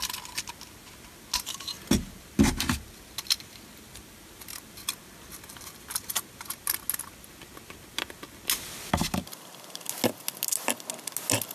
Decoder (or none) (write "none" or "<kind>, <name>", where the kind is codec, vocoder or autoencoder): none